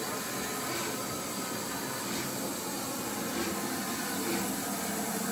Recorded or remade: recorded